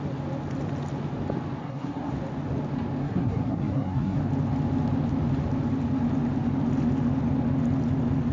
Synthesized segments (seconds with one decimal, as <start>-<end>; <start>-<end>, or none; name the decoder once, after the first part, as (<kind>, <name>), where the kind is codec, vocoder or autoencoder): 1.6-2.1 (codec, SNAC); 3.0-4.2